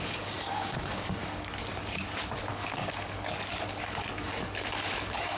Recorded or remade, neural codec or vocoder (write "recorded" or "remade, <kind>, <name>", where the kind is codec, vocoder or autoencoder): remade, codec, DAC